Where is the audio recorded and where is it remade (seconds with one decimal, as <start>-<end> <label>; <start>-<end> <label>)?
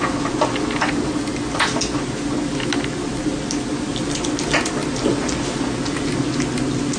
0.0-7.0 recorded